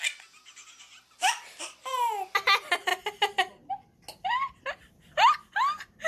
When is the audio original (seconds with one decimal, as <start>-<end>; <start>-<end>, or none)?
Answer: 0.0-6.1